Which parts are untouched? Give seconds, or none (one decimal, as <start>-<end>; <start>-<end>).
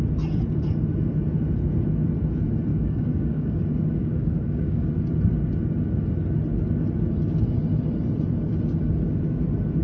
0.0-2.7; 3.6-4.0; 4.9-9.8